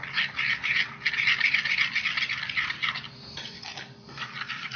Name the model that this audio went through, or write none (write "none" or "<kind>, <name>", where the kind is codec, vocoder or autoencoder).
none